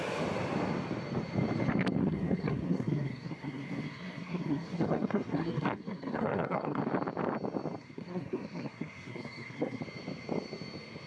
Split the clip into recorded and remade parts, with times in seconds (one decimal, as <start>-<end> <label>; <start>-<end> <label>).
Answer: 0.0-2.0 recorded; 2.0-6.8 remade; 6.8-7.8 recorded; 7.8-9.8 remade; 9.8-11.1 recorded